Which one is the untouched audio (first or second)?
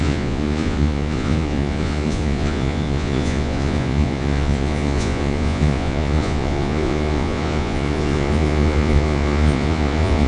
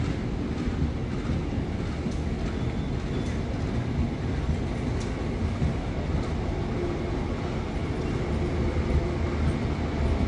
second